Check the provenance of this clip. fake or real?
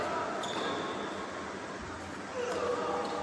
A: real